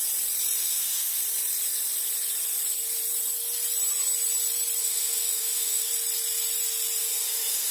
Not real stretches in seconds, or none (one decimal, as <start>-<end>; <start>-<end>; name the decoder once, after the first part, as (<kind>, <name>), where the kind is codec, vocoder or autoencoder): 0.6-1.2 (autoencoder, DAC-VAE); 4.8-5.9; 7.0-7.7